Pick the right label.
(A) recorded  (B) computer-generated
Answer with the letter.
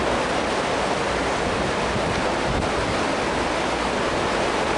A